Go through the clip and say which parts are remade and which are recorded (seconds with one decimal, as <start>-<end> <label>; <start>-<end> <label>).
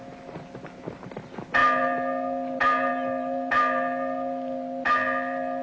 0.0-5.6 recorded